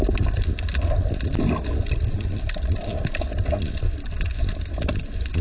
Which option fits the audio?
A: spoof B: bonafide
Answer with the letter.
B